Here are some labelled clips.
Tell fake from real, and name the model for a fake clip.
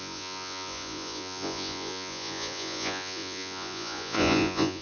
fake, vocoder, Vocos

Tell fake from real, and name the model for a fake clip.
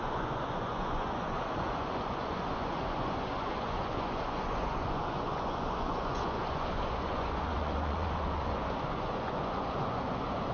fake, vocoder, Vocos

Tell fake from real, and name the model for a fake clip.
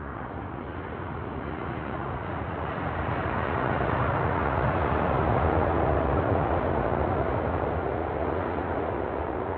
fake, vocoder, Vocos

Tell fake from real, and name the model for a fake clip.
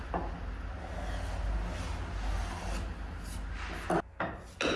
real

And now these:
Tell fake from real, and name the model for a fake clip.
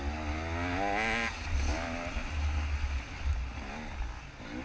real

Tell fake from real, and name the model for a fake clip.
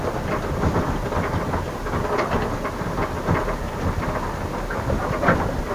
real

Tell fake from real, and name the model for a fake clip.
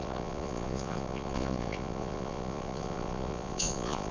fake, vocoder, Vocos